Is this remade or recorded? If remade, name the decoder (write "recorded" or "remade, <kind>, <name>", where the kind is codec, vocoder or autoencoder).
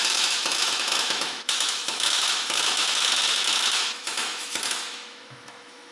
remade, autoencoder, DAC-VAE